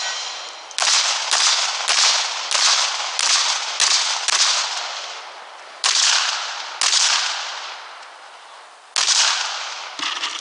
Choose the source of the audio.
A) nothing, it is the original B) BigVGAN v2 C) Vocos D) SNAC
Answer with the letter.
A